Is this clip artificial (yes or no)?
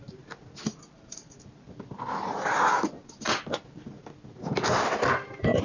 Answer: no